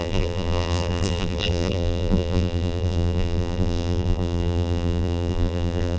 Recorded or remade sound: remade